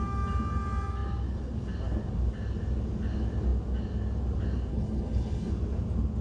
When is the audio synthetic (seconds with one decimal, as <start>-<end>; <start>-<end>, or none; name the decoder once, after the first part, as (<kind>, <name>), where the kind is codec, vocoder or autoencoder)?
4.7-5.5 (codec, HILCodec)